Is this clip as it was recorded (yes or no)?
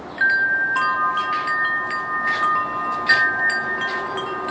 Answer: yes